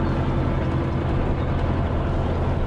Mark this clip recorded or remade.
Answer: recorded